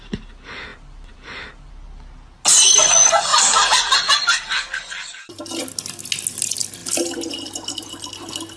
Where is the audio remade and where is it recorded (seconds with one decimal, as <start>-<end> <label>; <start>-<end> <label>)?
0.0-0.7 recorded; 0.7-1.7 remade; 1.7-3.3 recorded; 3.3-5.4 remade; 5.4-6.8 recorded; 6.8-7.9 remade; 7.9-8.6 recorded